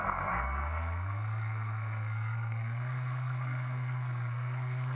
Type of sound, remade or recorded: remade